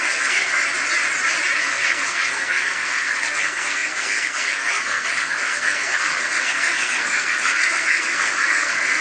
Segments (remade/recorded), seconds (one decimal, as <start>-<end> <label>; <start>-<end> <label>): 0.0-0.6 remade; 0.6-1.6 recorded; 1.6-9.0 remade